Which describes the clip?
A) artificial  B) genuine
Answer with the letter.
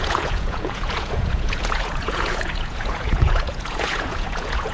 A